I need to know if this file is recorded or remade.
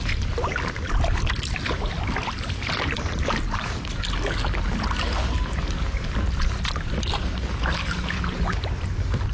recorded